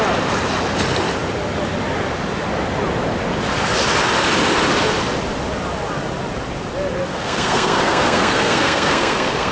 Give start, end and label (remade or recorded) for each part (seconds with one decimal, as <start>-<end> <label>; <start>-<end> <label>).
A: 0.0-7.1 recorded; 7.1-9.5 remade